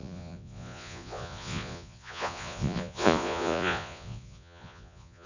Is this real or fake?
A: fake